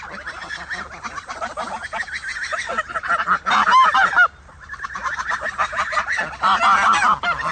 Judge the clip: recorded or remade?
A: recorded